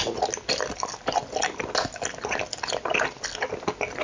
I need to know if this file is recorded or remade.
recorded